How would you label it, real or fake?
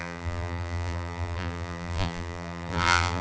fake